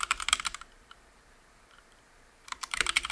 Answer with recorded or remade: remade